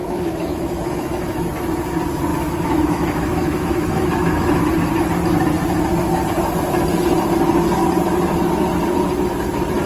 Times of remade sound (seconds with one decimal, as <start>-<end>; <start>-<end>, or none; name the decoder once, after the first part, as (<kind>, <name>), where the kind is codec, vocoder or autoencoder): 0.0-1.5 (autoencoder, DAC-VAE); 2.3-4.6